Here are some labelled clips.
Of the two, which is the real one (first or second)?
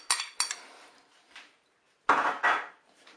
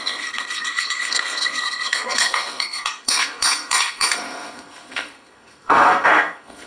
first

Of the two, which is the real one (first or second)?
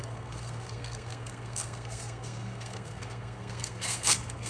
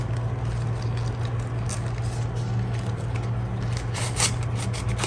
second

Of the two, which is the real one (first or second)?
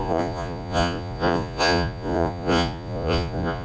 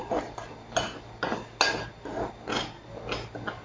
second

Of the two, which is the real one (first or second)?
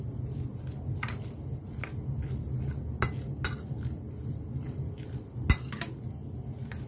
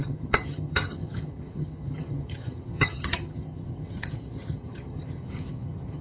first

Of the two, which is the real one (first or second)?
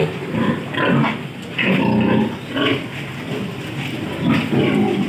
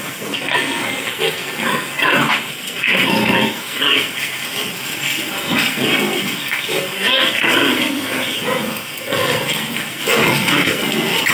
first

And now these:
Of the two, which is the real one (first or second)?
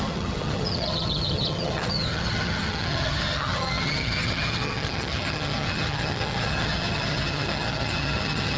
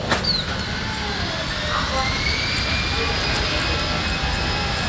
second